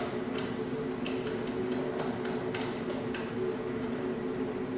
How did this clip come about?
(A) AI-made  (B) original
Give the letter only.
B